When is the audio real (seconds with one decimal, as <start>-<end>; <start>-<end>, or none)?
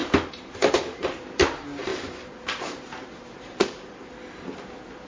1.4-1.9; 4.0-5.1